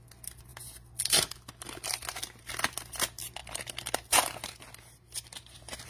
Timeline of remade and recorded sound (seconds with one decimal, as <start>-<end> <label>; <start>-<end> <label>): 0.0-5.9 recorded